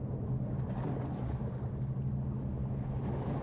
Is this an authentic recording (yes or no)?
yes